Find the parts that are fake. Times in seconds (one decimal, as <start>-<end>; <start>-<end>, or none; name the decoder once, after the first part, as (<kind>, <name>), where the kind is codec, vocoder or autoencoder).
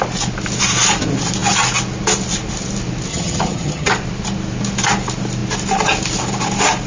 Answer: 3.1-3.9 (vocoder, HiFi-GAN)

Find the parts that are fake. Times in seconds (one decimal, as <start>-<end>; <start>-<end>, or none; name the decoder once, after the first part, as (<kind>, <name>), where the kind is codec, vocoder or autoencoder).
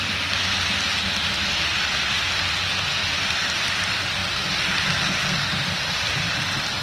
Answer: 3.0-3.8 (vocoder, BigVGAN v2)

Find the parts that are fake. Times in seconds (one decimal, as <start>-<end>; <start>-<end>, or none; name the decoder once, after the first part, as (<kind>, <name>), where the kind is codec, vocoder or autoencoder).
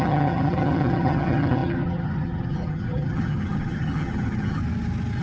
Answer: 0.0-4.6 (vocoder, HiFi-GAN)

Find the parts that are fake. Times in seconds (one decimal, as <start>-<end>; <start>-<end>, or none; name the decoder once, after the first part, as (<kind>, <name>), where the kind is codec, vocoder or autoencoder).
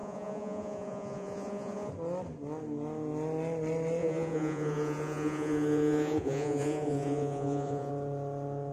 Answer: 0.0-1.9 (vocoder, Vocos); 4.0-7.9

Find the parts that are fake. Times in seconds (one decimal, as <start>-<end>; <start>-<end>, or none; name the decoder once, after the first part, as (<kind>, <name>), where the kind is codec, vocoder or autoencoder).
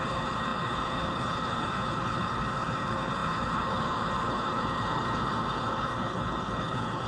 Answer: 0.0-7.1 (codec, HILCodec)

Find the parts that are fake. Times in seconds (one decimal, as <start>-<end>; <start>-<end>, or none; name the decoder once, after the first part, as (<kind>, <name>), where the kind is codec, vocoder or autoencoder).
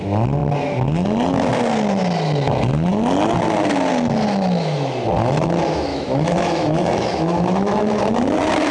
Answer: 5.9-8.0 (autoencoder, DAC-VAE)